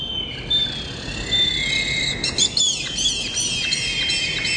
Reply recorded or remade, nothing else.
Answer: recorded